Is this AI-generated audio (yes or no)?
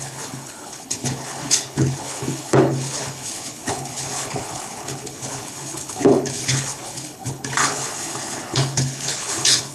yes